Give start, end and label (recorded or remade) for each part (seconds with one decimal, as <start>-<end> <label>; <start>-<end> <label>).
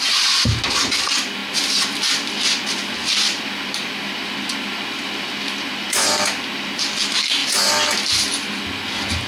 0.0-9.3 recorded